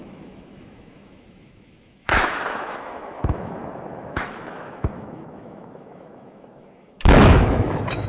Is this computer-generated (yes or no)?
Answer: yes